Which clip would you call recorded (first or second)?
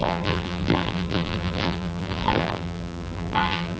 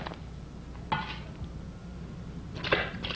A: second